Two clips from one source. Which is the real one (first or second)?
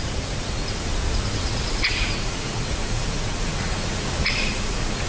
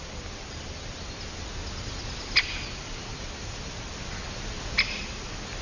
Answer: second